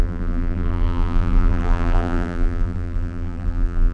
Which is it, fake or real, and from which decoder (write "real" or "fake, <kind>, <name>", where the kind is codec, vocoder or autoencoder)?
fake, vocoder, BigVGAN v2